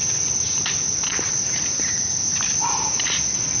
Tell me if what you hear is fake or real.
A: real